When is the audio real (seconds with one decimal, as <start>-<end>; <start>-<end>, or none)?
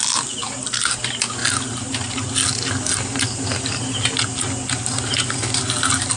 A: 0.0-6.2